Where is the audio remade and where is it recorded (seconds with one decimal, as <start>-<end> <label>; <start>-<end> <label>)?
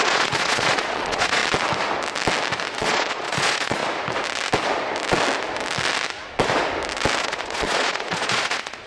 0.0-1.4 remade; 1.4-2.8 recorded; 2.8-3.8 remade; 3.8-7.2 recorded; 7.2-8.9 remade